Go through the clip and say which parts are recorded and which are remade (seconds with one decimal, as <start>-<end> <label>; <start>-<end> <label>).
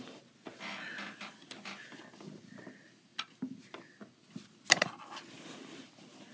0.0-6.3 recorded